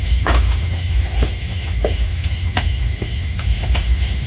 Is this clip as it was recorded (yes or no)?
no